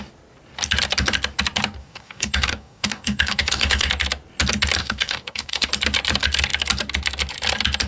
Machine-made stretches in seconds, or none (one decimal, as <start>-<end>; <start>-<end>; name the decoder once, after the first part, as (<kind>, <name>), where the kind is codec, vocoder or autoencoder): 1.8-3.9 (codec, DAC); 4.8-5.7